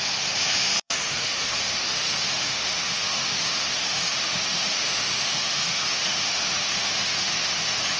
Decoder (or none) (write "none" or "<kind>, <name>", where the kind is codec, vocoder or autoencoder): autoencoder, DAC-VAE